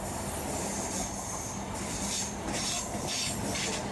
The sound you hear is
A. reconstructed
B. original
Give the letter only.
B